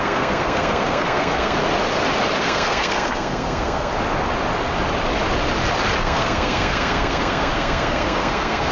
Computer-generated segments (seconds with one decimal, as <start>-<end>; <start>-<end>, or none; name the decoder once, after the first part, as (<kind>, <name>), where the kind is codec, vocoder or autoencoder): 0.0-1.6 (codec, SNAC); 2.4-3.9; 6.0-8.7